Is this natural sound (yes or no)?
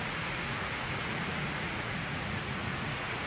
no